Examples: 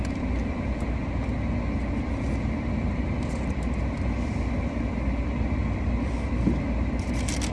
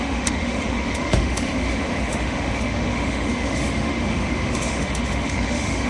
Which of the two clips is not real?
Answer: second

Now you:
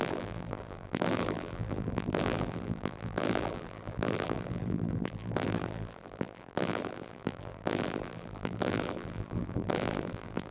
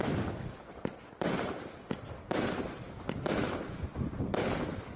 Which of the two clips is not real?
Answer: first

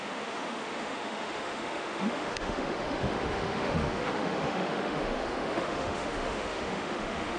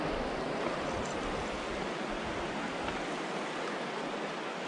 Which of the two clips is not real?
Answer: first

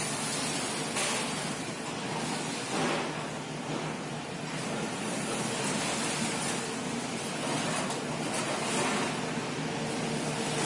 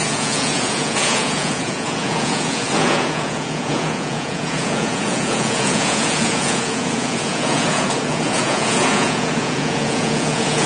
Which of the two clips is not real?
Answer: second